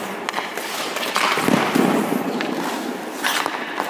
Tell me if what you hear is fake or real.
real